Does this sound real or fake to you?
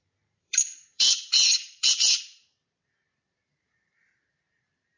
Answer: fake